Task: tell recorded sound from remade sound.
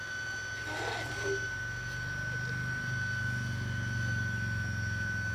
recorded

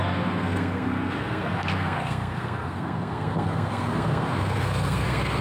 remade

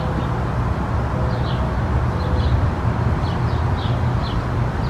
recorded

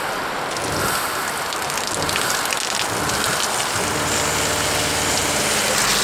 recorded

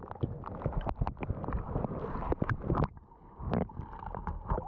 recorded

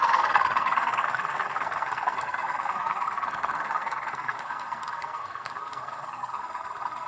remade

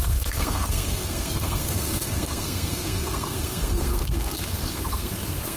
remade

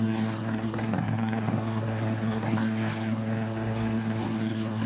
remade